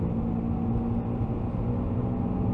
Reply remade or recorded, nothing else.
recorded